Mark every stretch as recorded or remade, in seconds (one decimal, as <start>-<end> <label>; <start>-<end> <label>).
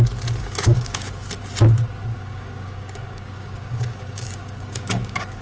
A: 0.0-0.4 recorded; 0.4-1.1 remade; 1.1-2.1 recorded; 2.1-5.4 remade